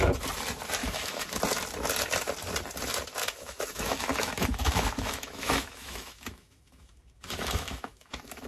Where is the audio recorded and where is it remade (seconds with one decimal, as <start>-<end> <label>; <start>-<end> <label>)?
0.0-0.8 recorded; 0.8-1.4 remade; 1.4-3.2 recorded; 3.2-8.5 remade